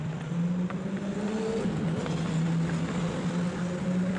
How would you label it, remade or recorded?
recorded